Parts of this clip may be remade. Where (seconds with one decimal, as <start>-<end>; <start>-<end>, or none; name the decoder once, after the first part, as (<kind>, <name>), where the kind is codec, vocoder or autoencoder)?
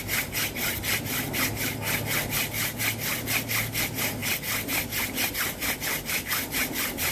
none